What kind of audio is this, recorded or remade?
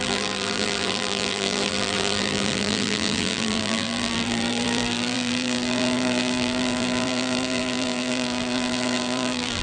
remade